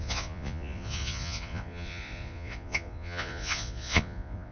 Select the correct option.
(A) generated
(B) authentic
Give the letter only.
A